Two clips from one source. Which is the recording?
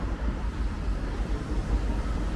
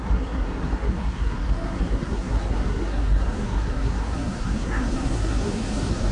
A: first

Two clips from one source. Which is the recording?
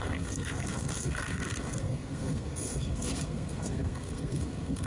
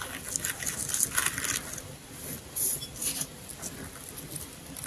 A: second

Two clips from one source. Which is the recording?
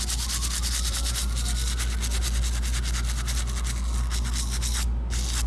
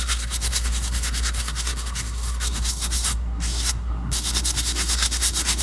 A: first